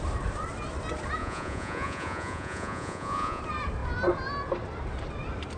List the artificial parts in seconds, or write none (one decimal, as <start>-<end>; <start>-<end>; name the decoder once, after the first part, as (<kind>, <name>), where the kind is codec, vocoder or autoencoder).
1.2-3.4 (vocoder, Vocos)